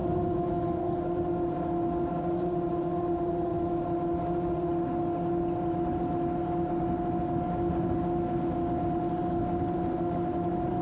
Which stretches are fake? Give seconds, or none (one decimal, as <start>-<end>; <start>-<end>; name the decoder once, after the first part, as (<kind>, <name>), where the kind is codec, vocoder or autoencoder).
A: none